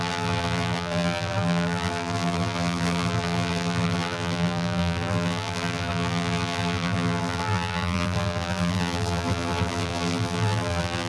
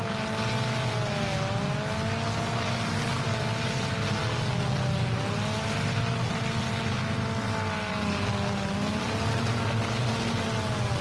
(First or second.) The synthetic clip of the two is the first